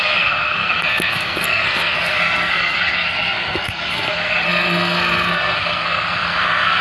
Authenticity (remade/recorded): remade